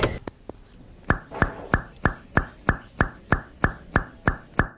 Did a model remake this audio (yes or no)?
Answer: no